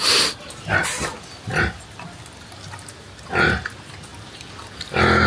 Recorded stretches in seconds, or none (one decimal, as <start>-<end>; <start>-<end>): 0.0-5.3